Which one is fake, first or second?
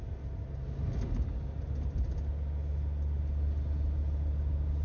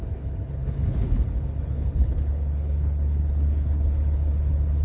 second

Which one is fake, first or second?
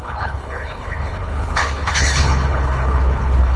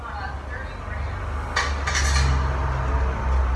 first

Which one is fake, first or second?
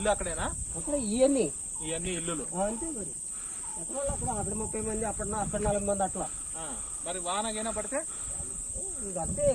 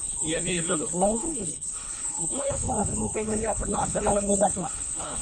second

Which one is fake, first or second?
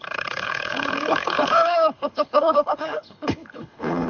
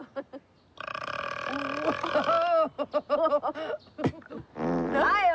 first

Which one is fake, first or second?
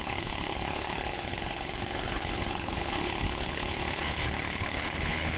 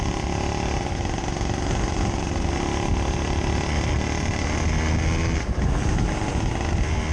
first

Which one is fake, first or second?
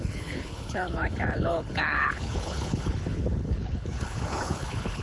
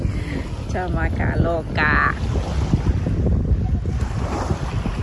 first